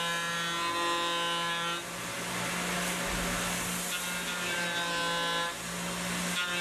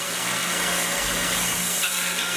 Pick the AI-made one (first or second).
second